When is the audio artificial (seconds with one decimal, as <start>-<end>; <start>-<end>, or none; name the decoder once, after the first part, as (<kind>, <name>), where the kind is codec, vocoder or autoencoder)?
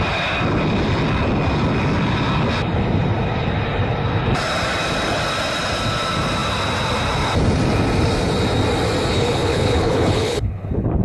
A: 9.1-11.0 (codec, HILCodec)